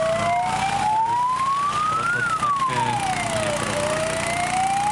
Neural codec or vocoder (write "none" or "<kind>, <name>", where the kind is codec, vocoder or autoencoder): none